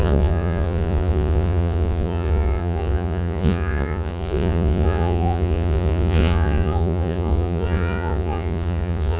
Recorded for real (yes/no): no